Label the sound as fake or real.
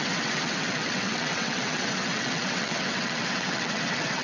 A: fake